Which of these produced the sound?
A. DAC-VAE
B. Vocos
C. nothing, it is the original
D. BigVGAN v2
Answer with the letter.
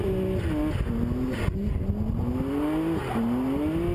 C